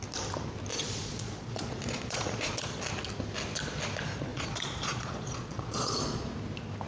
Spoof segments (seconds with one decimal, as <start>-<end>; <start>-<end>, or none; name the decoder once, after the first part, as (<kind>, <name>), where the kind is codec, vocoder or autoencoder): 0.7-2.8 (vocoder, Vocos); 4.3-6.3